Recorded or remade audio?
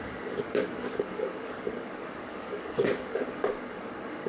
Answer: remade